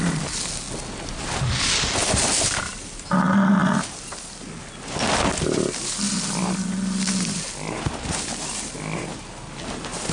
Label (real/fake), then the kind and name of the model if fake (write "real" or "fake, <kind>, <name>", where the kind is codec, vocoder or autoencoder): real